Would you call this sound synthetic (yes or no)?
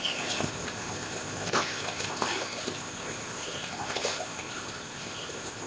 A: yes